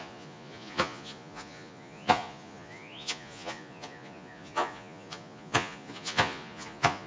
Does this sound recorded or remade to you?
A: remade